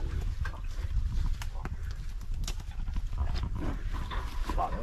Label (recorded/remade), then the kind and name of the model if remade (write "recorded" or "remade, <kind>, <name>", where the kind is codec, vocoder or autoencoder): recorded